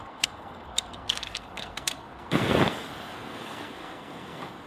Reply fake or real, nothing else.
fake